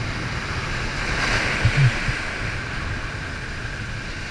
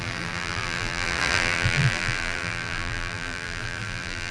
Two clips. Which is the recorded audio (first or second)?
first